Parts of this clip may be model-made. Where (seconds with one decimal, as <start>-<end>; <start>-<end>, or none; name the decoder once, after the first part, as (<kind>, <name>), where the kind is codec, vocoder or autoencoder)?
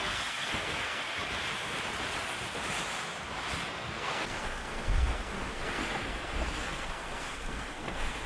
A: 0.0-1.1 (codec, SNAC); 3.7-8.3